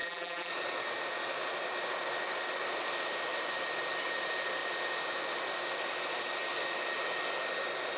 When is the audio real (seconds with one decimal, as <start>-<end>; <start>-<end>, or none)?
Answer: 0.5-8.0